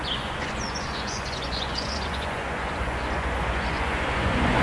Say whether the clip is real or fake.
fake